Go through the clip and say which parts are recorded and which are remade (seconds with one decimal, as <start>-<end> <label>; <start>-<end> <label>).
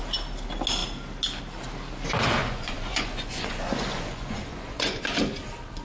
0.0-2.4 recorded; 2.4-5.0 remade; 5.0-5.8 recorded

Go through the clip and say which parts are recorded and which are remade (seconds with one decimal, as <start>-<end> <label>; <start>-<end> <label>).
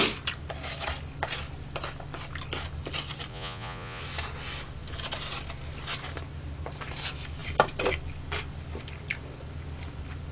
0.0-3.3 recorded; 3.3-4.0 remade; 4.0-10.3 recorded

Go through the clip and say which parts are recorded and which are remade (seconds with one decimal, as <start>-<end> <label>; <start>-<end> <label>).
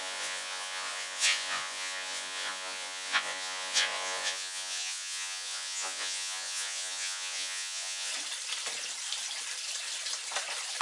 0.0-8.1 remade; 8.1-10.8 recorded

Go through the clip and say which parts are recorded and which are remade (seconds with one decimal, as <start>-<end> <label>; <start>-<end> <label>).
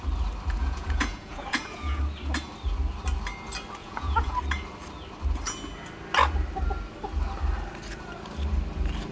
0.0-0.6 recorded; 0.6-2.0 remade; 2.0-3.8 recorded; 3.8-4.4 remade; 4.4-9.1 recorded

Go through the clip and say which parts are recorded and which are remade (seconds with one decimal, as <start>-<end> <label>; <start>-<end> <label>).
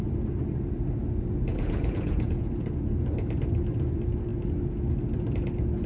0.0-1.5 recorded; 1.5-2.5 remade; 2.5-5.9 recorded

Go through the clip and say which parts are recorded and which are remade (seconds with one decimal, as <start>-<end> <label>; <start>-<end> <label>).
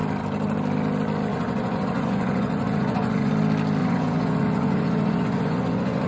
0.0-1.3 recorded; 1.3-3.3 remade; 3.3-3.8 recorded; 3.8-6.1 remade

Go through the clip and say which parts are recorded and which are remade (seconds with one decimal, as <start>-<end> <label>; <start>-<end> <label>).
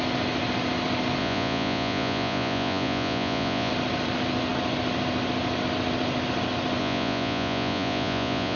0.0-1.2 recorded; 1.2-3.7 remade; 3.7-6.8 recorded; 6.8-8.6 remade